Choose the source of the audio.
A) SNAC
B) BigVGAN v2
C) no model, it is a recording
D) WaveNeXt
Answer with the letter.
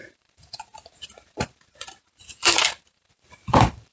B